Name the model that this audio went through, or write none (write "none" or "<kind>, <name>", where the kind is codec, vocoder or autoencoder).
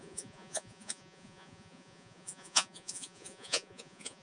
vocoder, Vocos